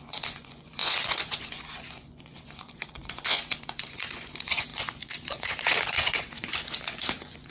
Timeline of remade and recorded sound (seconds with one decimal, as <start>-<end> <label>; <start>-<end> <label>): 0.0-7.5 remade